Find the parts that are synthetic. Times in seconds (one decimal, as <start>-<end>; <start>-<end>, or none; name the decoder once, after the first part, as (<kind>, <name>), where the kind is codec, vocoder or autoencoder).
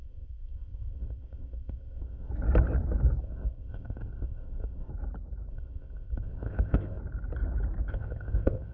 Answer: 0.0-2.3 (codec, ZipCodec); 3.2-4.9; 5.5-7.0; 7.9-8.7